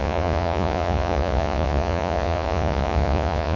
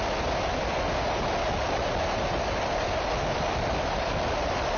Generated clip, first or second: first